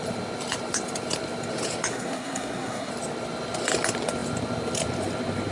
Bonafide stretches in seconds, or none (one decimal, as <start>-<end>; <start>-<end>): 0.0-1.9; 2.9-5.5

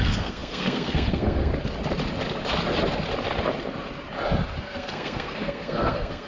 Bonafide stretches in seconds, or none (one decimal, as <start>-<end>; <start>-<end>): 1.5-4.6

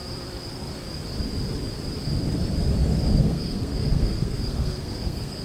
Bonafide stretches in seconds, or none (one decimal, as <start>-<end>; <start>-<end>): 0.0-3.2

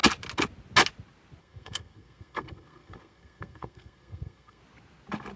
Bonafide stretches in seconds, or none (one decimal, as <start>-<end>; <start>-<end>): 0.0-1.4; 4.6-5.4

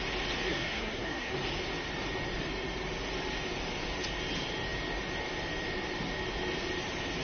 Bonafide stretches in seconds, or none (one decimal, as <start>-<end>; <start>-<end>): 0.0-0.5; 1.3-7.2

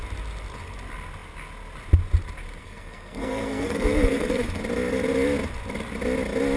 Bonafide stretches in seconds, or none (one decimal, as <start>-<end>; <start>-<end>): 0.0-2.6; 4.6-6.6